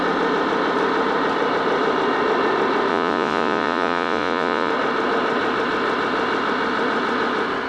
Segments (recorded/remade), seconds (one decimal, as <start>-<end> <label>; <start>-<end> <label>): 0.0-2.9 recorded; 2.9-4.7 remade; 4.7-7.7 recorded

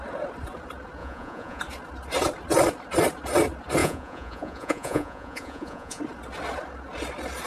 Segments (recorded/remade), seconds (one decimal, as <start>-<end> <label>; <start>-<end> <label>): 0.0-1.0 recorded; 1.0-1.6 remade; 1.6-3.8 recorded; 3.8-6.0 remade; 6.0-7.5 recorded

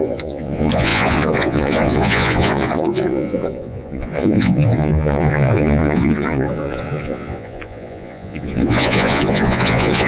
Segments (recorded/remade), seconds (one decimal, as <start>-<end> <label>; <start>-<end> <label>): 0.0-10.1 remade

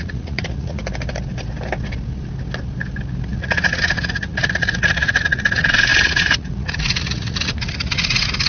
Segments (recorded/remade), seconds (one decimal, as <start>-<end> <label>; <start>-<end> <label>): 0.0-0.8 remade; 0.8-3.3 recorded; 3.3-8.5 remade

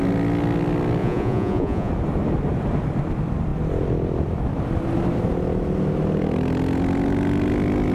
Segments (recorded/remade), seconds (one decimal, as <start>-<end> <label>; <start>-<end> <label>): 0.0-1.0 recorded; 1.0-1.9 remade; 1.9-7.9 recorded